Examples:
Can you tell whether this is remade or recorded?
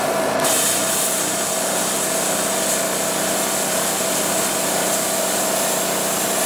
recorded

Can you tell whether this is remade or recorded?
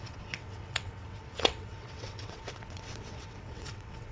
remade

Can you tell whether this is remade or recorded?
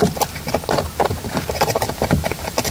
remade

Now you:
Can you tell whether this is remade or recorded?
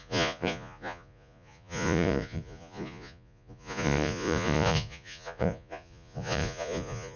remade